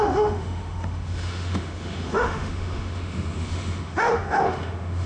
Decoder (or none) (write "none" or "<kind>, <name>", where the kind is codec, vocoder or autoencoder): autoencoder, DAC-VAE